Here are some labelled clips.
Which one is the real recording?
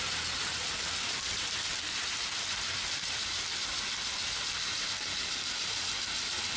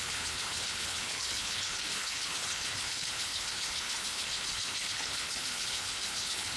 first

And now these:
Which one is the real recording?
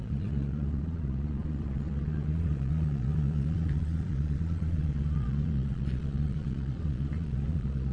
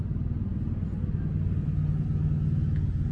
second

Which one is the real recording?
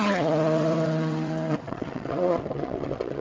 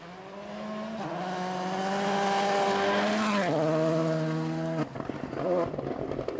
second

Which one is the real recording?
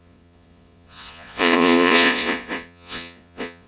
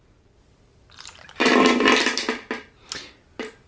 second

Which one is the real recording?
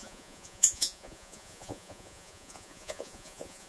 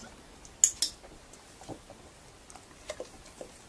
second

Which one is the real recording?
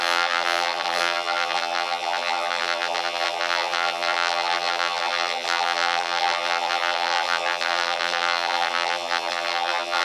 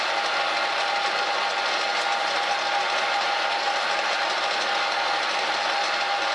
second